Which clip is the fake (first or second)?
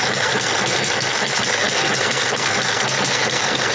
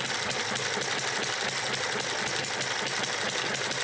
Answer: first